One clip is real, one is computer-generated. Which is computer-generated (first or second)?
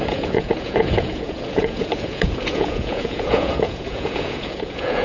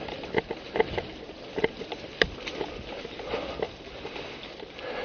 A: first